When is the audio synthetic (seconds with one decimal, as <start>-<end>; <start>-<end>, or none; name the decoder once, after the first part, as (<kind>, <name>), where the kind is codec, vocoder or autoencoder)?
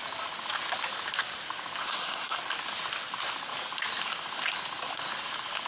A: 1.8-2.4 (codec, SNAC)